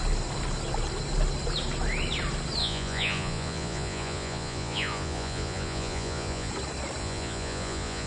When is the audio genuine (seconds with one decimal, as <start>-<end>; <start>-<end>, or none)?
0.0-2.6; 6.5-7.0